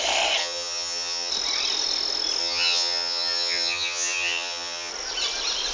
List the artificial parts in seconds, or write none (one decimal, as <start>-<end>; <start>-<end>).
0.4-1.3; 2.4-4.9